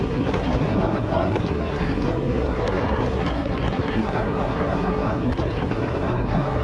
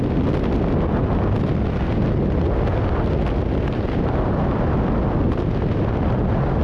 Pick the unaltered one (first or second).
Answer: second